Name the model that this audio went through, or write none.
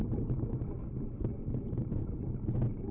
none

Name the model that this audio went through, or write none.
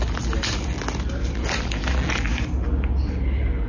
none